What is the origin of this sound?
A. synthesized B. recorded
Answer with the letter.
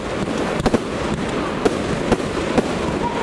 A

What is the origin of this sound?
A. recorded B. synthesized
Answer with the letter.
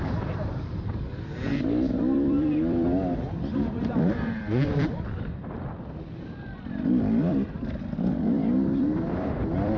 B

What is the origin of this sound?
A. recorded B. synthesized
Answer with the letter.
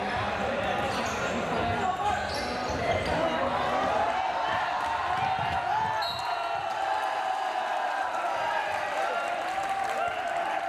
A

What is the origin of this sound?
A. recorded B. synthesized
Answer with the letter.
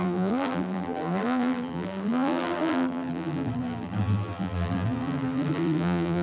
B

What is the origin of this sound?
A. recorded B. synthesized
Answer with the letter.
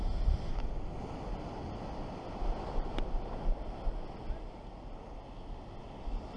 A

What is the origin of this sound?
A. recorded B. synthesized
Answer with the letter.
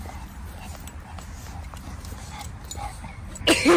A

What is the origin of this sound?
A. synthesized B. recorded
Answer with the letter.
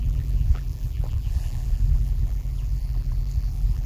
A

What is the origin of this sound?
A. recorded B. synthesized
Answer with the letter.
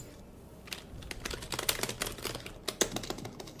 A